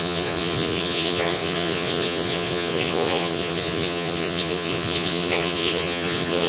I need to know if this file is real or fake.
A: fake